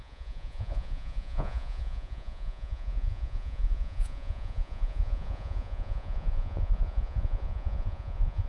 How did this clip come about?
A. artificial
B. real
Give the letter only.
A